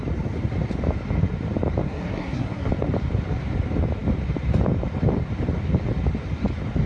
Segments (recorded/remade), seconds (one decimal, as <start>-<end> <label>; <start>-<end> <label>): 0.0-1.8 recorded; 1.8-2.7 remade; 2.7-6.9 recorded